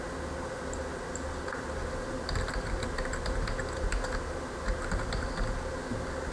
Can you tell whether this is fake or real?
real